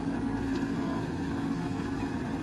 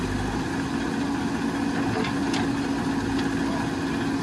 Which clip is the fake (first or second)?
first